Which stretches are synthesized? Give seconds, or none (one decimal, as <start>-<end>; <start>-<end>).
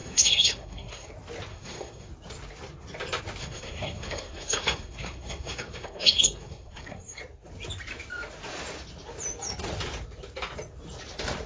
0.0-1.1; 1.5-2.1; 3.4-7.2